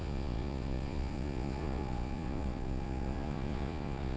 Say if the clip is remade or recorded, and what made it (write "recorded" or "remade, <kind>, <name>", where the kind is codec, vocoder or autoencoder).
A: remade, vocoder, Vocos